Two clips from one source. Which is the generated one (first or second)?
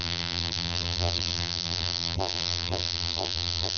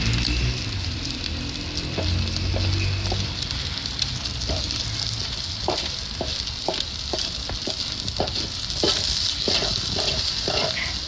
first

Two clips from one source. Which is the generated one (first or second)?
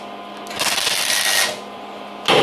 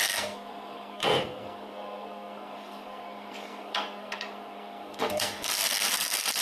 second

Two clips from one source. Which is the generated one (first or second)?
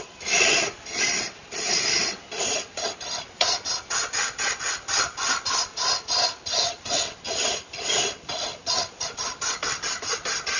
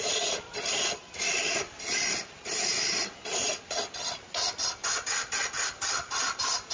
first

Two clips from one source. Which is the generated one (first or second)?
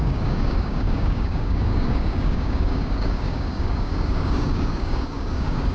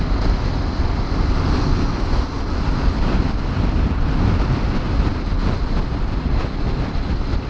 first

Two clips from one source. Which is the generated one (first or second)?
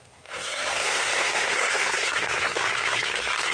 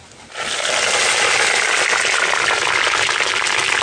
first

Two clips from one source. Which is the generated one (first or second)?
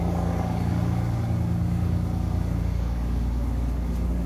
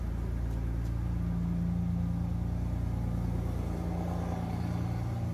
first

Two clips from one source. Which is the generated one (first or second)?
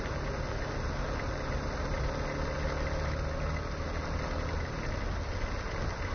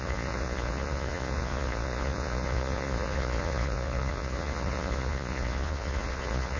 second